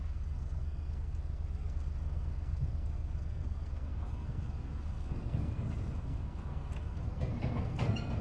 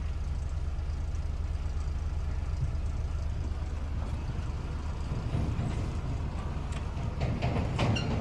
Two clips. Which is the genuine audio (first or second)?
second